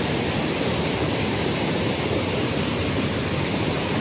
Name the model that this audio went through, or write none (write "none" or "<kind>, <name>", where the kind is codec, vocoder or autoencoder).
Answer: vocoder, BigVGAN v2